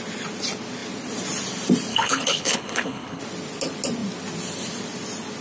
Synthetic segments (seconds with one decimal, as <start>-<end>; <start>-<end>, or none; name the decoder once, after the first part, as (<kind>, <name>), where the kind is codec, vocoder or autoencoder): 1.9-3.2 (codec, HILCodec)